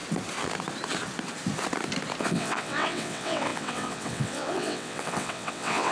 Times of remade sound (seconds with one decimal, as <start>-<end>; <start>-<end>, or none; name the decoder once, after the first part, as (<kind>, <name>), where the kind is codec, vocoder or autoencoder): 2.2-5.9 (vocoder, WaveNeXt)